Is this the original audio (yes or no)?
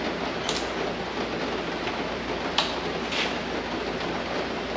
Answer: yes